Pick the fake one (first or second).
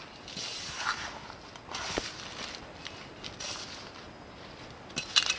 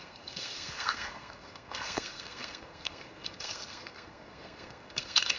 second